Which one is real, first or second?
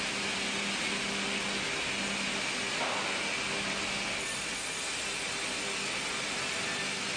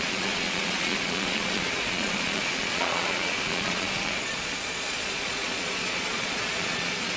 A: first